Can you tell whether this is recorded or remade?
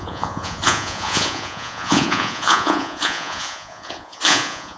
remade